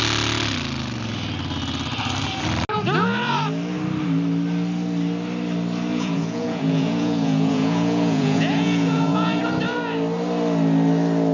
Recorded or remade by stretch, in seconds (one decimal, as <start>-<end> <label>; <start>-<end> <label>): 0.0-5.9 recorded; 5.9-9.4 remade; 9.4-11.3 recorded